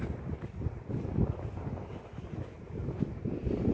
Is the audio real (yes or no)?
yes